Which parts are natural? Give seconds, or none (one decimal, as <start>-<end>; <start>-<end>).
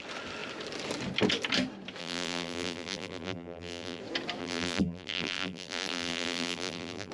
0.0-2.0; 4.0-4.4